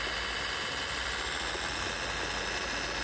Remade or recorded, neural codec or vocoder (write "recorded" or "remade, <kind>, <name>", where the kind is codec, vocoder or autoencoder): recorded